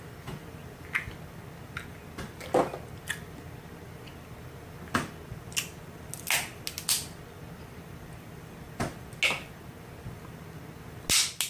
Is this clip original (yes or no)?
yes